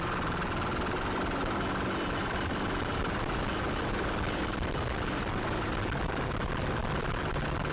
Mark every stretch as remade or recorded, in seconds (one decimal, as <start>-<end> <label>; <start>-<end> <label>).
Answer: 0.0-2.2 recorded; 2.2-6.8 remade; 6.8-7.7 recorded